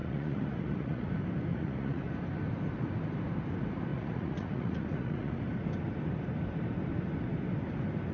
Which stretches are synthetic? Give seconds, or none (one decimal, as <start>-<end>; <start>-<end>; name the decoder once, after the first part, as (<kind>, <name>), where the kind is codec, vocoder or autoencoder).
0.0-1.1 (vocoder, Vocos); 1.5-2.1; 3.9-5.4